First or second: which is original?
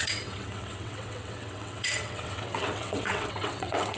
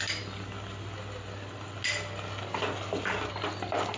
second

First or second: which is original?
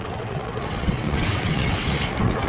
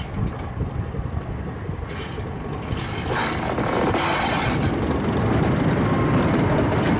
second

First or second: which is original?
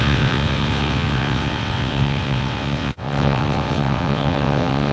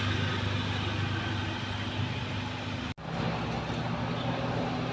second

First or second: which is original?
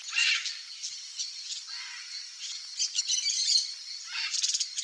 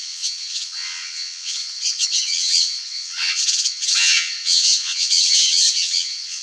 first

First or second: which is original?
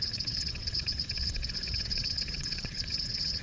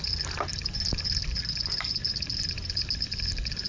second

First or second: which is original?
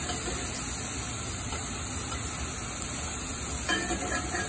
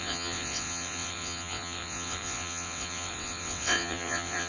first